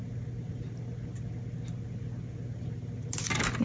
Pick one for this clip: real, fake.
real